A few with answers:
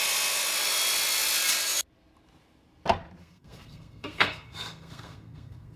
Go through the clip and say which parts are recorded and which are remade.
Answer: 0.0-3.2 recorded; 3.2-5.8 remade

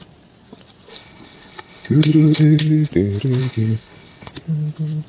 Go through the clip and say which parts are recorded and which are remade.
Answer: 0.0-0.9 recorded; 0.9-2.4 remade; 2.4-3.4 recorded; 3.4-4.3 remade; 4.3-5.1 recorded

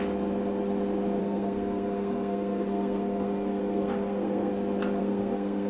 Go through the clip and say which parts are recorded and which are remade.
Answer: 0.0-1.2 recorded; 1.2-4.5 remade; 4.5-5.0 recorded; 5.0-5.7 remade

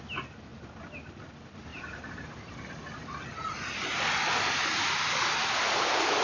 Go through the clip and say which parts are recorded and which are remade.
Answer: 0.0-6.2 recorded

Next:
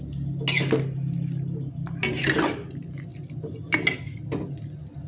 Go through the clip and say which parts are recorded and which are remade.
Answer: 0.0-5.1 recorded